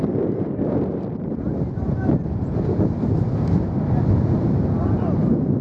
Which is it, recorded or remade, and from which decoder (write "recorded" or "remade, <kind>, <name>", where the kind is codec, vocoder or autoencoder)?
recorded